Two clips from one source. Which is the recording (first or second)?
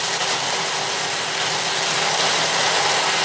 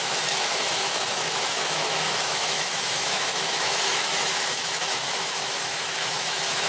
first